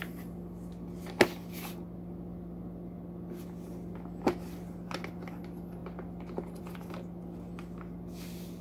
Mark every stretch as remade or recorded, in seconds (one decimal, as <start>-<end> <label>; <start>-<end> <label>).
0.0-8.6 recorded